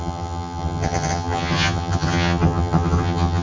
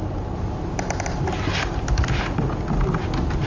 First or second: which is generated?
first